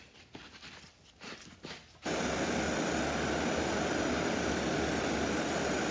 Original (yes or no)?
yes